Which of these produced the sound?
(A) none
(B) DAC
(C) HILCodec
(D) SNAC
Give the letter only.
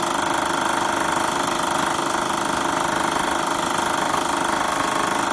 A